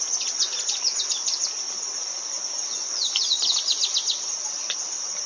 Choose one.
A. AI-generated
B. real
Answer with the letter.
B